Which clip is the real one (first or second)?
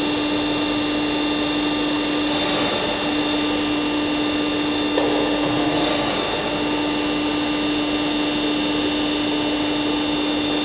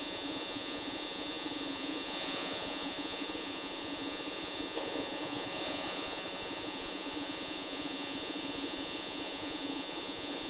first